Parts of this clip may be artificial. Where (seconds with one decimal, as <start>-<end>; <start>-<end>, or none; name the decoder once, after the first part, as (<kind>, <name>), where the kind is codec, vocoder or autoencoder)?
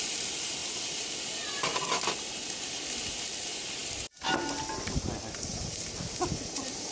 none